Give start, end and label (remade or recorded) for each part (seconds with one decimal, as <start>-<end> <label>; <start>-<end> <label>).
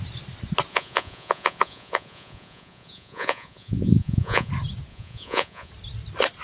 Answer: 0.0-0.7 recorded; 0.7-4.5 remade; 4.5-4.9 recorded; 4.9-5.7 remade; 5.7-6.4 recorded